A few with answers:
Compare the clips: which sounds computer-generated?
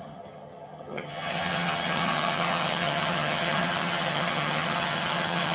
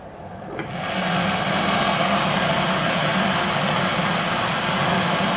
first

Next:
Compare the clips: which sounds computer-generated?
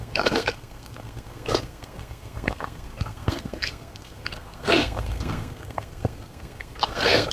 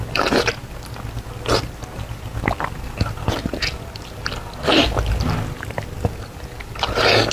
first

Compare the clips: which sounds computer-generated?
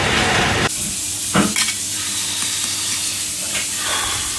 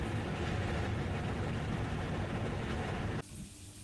first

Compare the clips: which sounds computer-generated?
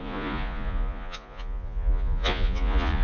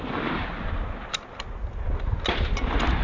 first